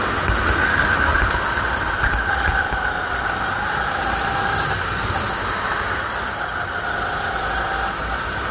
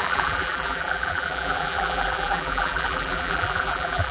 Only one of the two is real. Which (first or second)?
first